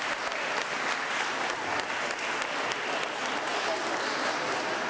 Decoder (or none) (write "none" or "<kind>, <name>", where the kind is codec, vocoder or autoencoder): none